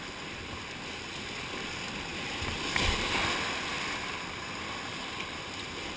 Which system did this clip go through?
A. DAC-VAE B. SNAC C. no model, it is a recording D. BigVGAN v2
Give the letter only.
C